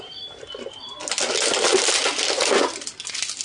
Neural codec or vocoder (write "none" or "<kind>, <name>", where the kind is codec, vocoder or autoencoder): none